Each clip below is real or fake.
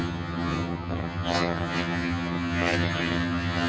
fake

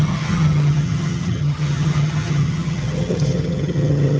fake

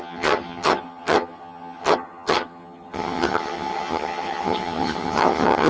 fake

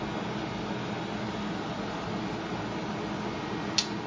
real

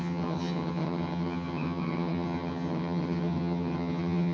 fake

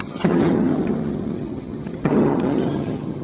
fake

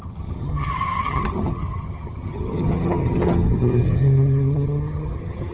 fake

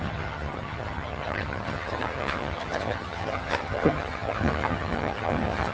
fake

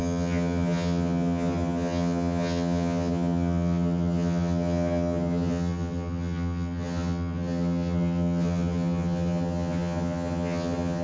fake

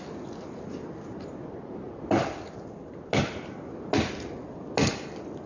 real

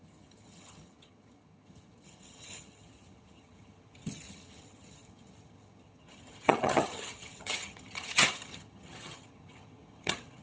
fake